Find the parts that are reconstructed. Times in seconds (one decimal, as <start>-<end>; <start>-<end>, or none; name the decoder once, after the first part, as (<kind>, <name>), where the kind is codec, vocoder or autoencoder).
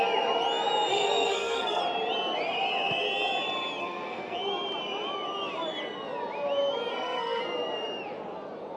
0.9-1.8 (codec, SNAC); 3.8-4.4; 6.9-7.4